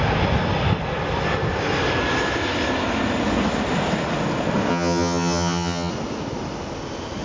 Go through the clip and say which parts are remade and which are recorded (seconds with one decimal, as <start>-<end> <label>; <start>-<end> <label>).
0.0-4.7 recorded; 4.7-5.9 remade; 5.9-7.2 recorded